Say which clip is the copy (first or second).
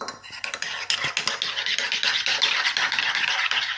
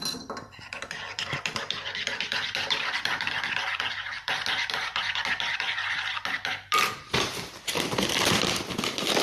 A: second